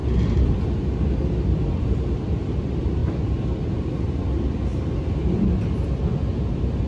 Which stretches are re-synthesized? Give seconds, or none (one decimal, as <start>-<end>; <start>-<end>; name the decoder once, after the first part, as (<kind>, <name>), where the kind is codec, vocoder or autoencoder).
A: 0.0-0.6 (vocoder, BigVGAN v2); 3.0-3.6